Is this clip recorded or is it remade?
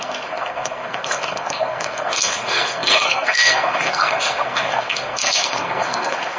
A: remade